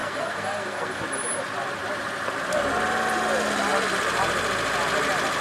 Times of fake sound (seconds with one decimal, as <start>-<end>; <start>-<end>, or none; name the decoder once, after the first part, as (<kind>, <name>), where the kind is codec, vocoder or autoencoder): 0.0-1.0 (codec, SNAC)